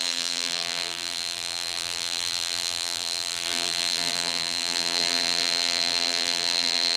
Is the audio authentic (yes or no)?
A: no